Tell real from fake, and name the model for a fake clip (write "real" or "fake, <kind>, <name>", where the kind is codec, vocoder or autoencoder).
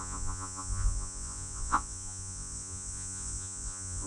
fake, vocoder, Vocos